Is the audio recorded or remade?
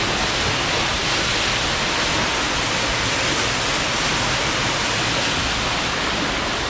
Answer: recorded